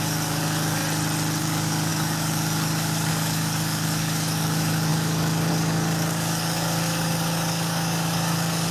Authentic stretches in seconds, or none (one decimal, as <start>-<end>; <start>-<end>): 0.8-1.4